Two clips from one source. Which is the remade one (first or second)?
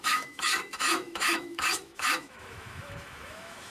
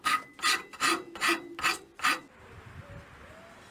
first